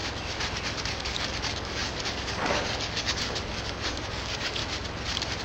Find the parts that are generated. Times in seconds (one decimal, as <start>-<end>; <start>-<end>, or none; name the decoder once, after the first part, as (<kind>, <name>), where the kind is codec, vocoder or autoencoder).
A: 0.9-4.6 (codec, DAC)